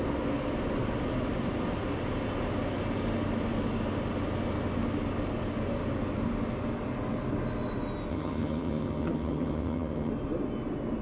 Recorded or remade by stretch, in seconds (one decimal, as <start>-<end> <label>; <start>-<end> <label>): 0.0-8.1 recorded; 8.1-10.1 remade; 10.1-11.0 recorded